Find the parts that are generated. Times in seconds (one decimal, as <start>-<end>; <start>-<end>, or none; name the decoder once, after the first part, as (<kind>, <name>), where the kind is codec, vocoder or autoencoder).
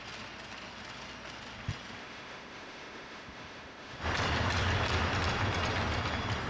2.0-4.0 (autoencoder, DAC-VAE)